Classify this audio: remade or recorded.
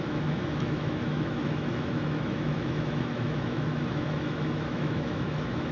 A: remade